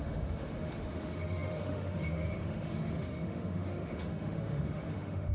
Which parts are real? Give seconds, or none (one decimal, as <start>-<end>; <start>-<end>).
none